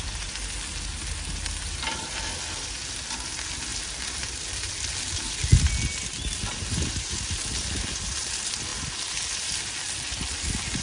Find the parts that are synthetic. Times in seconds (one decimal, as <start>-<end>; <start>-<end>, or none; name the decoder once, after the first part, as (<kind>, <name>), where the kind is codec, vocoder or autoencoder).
none

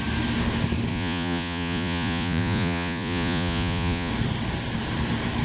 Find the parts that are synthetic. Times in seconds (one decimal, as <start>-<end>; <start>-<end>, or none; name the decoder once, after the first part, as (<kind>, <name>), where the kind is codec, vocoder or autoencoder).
0.9-4.1 (vocoder, Vocos)